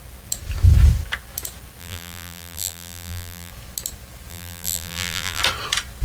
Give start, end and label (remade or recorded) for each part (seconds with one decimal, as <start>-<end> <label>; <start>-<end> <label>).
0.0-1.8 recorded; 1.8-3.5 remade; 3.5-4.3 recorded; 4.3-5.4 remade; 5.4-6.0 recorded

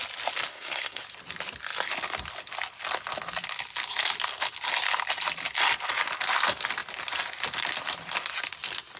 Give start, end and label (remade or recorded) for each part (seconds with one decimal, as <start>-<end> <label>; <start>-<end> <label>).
0.0-0.5 recorded; 0.5-1.0 remade; 1.0-9.0 recorded

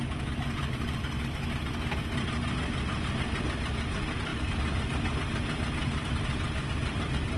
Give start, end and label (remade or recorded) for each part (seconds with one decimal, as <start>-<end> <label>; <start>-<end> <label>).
0.0-7.4 recorded

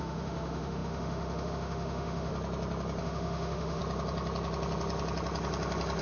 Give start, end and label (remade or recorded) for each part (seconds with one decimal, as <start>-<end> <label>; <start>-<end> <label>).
0.0-2.3 remade; 2.3-3.0 recorded; 3.0-3.8 remade; 3.8-6.0 recorded

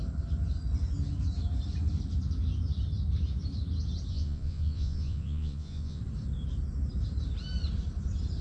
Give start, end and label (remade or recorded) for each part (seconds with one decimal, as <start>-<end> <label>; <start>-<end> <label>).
0.0-4.1 recorded; 4.1-6.0 remade; 6.0-8.4 recorded